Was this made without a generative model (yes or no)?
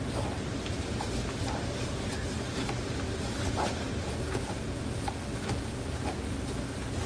yes